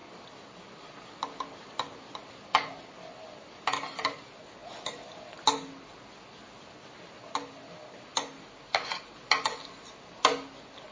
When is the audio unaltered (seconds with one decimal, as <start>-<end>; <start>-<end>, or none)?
0.0-10.9